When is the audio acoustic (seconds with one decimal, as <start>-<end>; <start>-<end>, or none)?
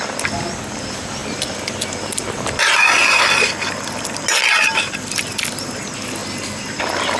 0.0-7.2